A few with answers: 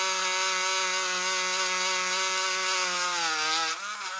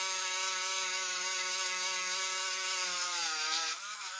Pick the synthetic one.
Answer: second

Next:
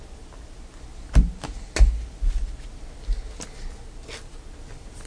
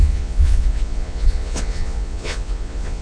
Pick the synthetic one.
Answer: second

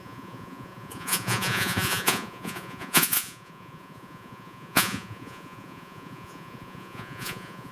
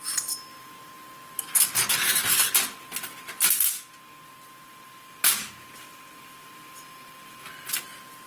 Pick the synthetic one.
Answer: first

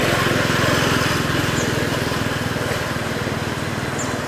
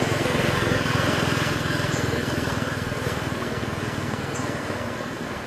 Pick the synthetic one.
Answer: second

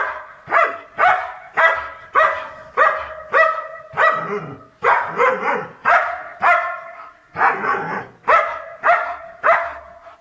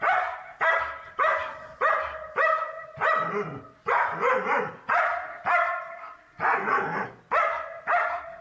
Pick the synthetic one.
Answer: second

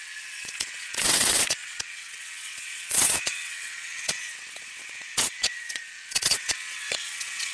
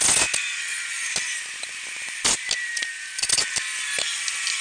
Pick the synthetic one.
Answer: first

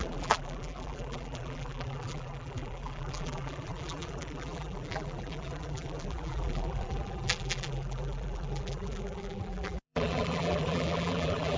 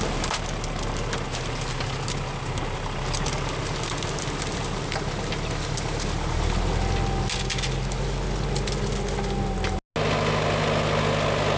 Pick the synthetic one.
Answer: first